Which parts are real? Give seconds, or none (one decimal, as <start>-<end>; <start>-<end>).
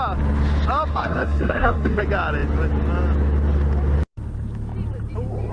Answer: 0.0-0.9; 2.0-5.5